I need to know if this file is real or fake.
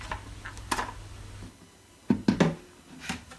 real